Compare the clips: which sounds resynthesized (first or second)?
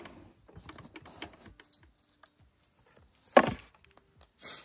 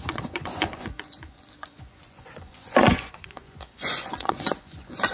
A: second